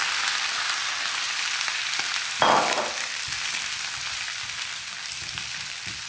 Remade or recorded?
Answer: remade